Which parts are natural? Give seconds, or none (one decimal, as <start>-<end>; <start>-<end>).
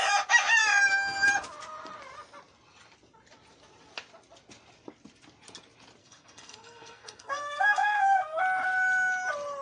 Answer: 0.0-6.0; 8.4-9.6